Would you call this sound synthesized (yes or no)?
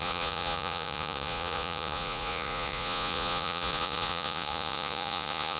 yes